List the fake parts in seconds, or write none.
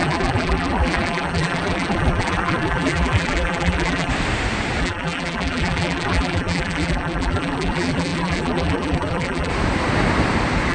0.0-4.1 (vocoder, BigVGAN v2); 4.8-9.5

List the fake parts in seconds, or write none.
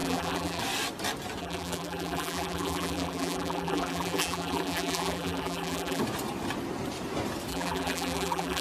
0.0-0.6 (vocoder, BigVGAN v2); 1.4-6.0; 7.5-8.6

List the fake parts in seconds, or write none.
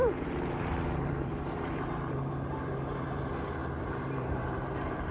0.0-5.1 (vocoder, BigVGAN v2)